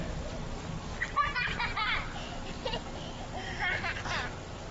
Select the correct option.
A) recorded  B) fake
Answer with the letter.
A